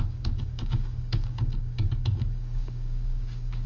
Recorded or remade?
remade